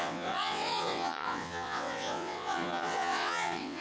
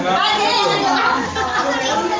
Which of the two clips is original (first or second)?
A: second